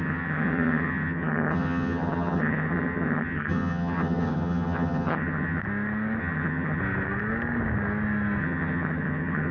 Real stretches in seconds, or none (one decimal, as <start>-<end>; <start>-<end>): 5.6-6.2; 6.8-8.4